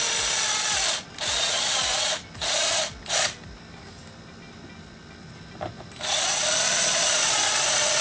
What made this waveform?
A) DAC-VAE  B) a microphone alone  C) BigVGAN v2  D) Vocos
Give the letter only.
B